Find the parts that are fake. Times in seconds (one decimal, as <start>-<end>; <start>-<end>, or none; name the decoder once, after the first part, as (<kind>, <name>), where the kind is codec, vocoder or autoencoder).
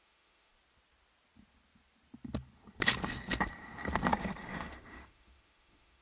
0.0-0.5 (autoencoder, DAC-VAE); 4.1-6.0